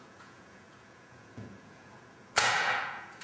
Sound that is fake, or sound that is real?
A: fake